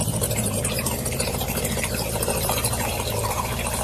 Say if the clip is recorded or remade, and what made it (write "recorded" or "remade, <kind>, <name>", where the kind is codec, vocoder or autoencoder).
remade, vocoder, BigVGAN v2